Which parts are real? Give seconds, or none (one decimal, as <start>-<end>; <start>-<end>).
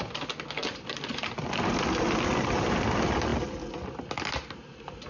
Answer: 0.0-5.1